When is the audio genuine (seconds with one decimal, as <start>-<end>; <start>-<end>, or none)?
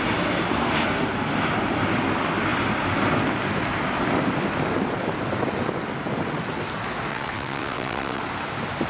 0.0-7.1; 8.2-8.9